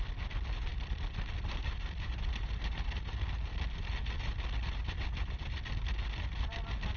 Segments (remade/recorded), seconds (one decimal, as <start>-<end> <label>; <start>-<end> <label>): 0.0-0.7 recorded; 0.7-3.0 remade; 3.0-7.0 recorded